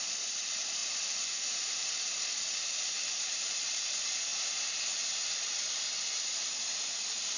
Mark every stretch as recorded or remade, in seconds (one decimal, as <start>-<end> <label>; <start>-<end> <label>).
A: 0.0-4.3 remade; 4.3-6.6 recorded; 6.6-7.4 remade